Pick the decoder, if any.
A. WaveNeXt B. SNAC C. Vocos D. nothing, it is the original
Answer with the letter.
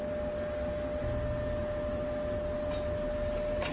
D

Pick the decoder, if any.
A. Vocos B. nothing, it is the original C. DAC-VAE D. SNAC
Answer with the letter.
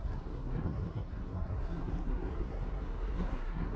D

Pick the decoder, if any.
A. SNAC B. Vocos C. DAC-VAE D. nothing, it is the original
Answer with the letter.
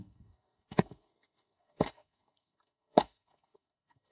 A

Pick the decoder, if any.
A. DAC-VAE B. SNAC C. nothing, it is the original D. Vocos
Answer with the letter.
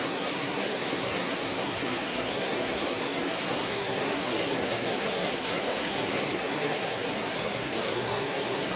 B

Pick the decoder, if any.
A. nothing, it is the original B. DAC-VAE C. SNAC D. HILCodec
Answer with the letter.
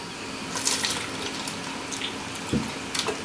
A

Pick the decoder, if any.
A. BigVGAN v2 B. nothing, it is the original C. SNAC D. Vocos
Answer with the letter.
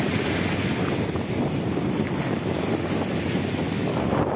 B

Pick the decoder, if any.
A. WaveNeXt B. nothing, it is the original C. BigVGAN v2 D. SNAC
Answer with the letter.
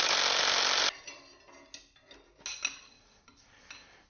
B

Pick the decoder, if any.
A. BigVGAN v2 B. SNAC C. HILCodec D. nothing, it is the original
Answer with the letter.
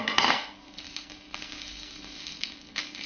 B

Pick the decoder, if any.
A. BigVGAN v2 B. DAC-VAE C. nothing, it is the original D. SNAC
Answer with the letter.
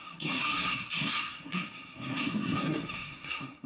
D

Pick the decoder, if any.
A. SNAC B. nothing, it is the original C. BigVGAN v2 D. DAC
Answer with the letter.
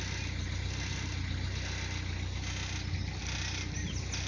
B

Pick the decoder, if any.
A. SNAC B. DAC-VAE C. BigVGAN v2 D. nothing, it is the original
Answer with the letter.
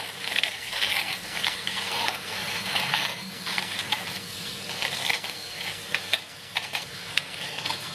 A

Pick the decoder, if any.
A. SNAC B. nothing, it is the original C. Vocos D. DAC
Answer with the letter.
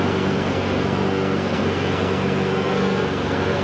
A